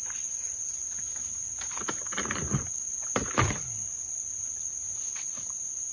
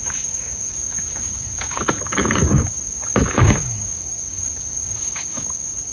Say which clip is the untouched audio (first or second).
first